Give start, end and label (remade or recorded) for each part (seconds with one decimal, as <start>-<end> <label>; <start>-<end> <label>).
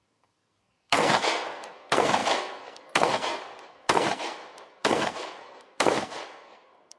0.0-7.0 remade